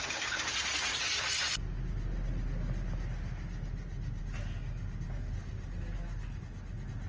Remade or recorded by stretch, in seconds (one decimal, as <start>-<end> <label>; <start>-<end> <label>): 0.0-7.1 recorded